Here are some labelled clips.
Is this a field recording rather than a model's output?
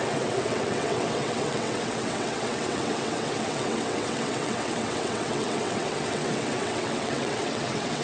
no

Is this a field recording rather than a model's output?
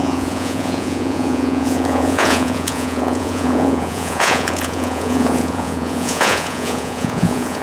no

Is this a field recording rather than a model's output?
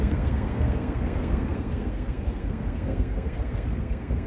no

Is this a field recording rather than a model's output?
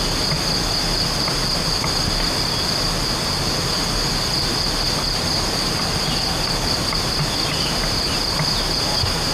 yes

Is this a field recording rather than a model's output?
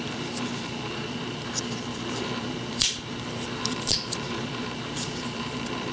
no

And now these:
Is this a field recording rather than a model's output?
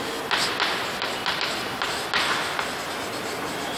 yes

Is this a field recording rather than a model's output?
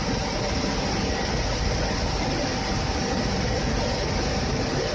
yes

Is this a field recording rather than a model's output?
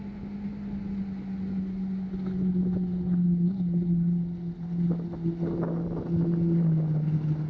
yes